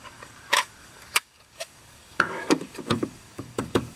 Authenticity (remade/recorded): remade